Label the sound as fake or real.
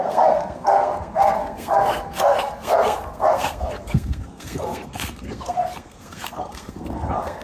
fake